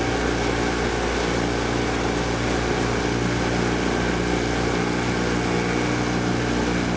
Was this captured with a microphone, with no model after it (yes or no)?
yes